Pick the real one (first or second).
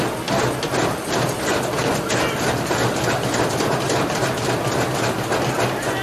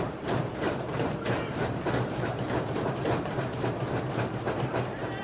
first